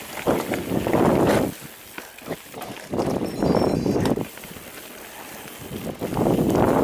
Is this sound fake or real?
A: real